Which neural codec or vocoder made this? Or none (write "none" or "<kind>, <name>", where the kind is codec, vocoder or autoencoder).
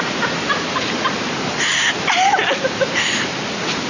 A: none